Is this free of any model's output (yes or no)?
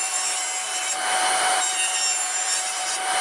no